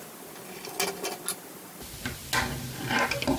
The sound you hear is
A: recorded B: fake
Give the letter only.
A